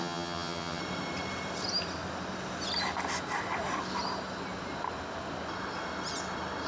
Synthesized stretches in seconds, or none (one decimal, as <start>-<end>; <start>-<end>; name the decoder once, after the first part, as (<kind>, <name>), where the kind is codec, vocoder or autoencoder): 0.0-0.8 (vocoder, HiFi-GAN)